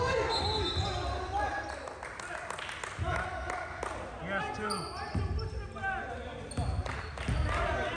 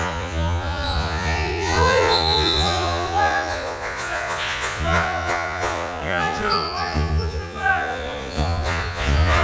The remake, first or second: second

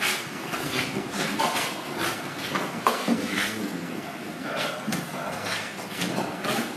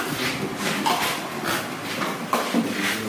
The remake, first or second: first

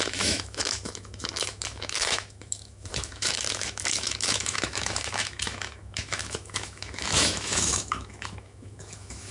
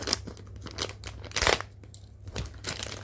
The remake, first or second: first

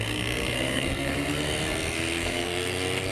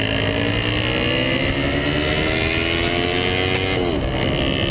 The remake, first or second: first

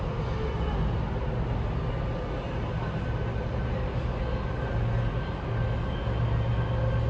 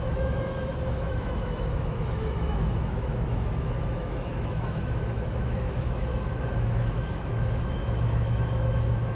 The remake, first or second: second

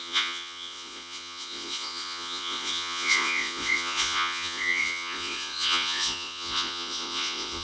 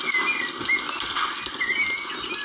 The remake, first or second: first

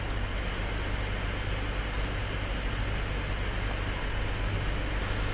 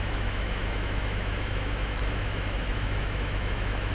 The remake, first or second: second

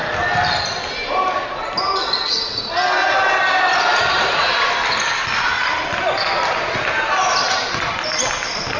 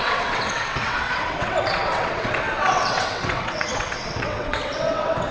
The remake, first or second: second